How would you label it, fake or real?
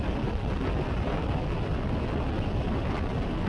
real